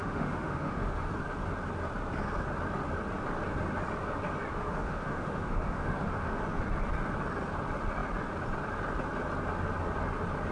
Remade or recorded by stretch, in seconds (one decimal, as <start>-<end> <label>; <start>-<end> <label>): 0.0-1.1 remade; 1.1-4.5 recorded; 4.5-6.4 remade; 6.4-10.5 recorded